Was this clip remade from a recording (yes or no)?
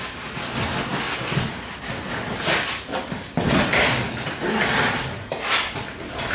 no